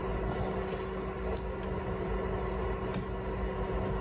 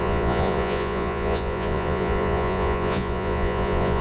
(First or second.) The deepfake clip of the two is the second